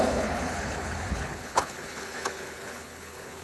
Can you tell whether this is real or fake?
fake